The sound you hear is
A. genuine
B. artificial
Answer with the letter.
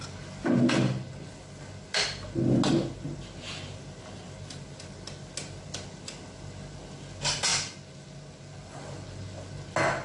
A